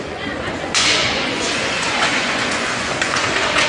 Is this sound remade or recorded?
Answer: remade